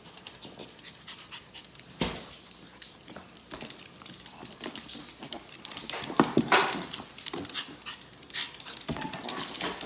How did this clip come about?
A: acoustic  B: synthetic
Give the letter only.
A